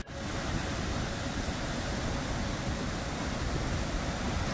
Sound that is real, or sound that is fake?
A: real